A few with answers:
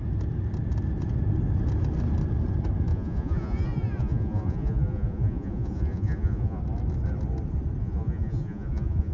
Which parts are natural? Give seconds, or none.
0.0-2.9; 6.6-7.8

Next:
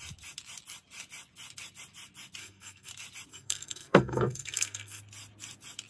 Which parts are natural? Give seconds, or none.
0.0-2.4; 2.9-3.3; 5.0-5.9

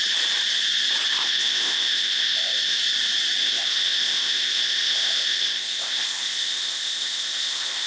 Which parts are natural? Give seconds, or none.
0.0-1.1; 2.8-3.4

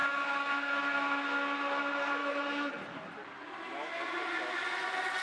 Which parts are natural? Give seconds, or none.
0.8-2.2; 2.7-5.2

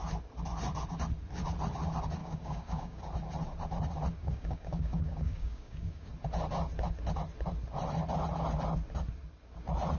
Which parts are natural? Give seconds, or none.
0.0-2.2; 3.0-4.2; 6.1-10.0